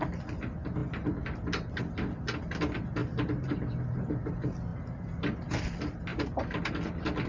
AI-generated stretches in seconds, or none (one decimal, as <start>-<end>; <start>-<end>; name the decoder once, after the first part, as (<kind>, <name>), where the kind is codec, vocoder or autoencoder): 3.0-4.3 (vocoder, BigVGAN v2); 4.7-5.6; 6.1-6.6